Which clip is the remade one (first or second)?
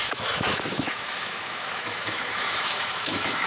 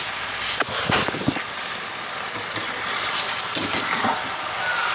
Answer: first